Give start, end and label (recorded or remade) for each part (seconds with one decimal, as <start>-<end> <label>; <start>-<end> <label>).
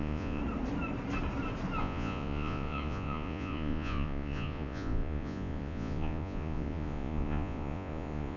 0.0-0.4 remade; 0.4-1.8 recorded; 1.8-8.4 remade